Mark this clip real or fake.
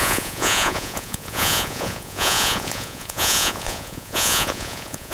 fake